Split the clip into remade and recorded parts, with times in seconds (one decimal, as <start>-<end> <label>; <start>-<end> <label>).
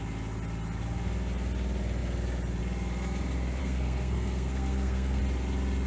0.0-3.6 recorded; 3.6-5.2 remade; 5.2-5.9 recorded